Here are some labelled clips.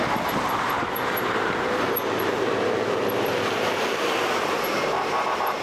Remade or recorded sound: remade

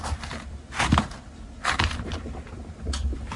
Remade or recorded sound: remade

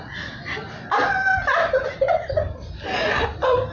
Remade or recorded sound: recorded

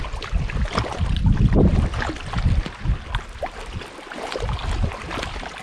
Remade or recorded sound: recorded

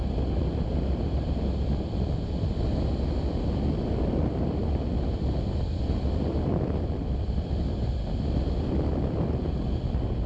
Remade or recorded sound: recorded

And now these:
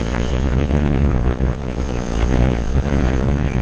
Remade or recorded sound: remade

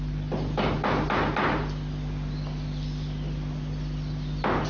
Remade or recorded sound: recorded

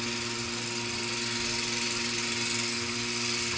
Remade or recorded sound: recorded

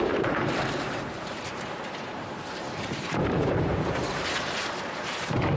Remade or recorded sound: remade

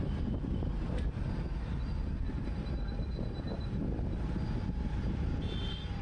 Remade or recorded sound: recorded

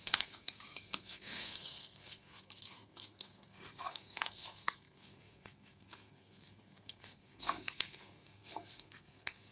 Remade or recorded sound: remade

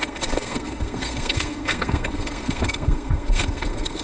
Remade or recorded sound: remade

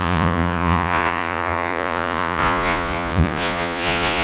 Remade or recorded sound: remade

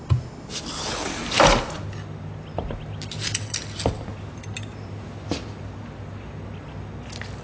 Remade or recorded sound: recorded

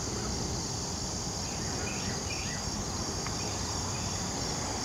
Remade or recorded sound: recorded